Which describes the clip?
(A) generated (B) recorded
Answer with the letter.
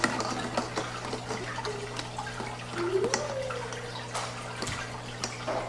B